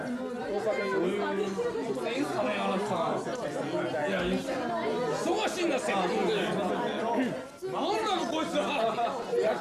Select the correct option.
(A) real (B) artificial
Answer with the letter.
A